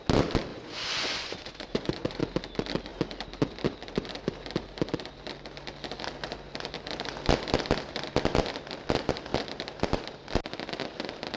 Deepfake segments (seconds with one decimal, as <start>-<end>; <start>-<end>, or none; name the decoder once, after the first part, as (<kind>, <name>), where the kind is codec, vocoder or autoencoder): 0.5-2.2 (vocoder, Vocos)